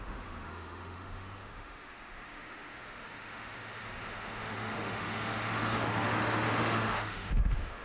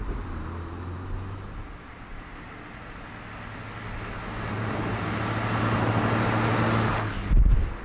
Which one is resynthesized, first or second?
first